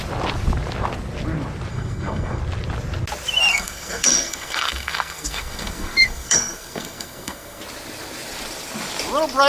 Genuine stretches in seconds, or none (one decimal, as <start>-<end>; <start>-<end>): 0.0-1.7; 2.4-3.5; 7.6-9.5